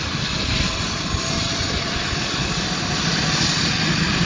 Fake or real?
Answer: real